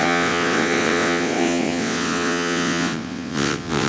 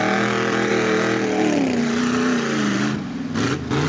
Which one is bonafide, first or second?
second